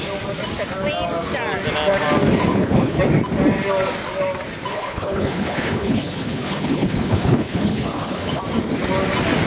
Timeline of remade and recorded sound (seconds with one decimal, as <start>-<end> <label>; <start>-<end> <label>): 0.0-2.5 recorded; 2.5-3.0 remade; 3.0-4.7 recorded; 4.7-8.4 remade; 8.4-9.5 recorded